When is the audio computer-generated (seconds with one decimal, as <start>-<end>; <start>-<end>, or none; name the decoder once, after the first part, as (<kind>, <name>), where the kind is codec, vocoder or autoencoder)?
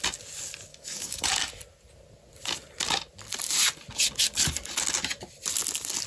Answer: 0.7-1.6 (codec, DAC)